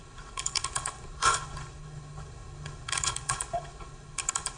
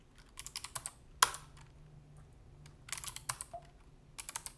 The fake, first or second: first